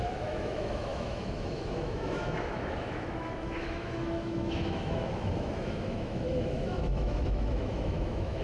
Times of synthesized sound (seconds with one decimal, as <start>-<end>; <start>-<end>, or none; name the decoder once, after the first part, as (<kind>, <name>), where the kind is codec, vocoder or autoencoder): 0.0-8.4 (autoencoder, DAC-VAE)